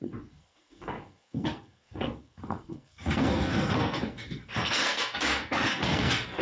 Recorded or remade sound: remade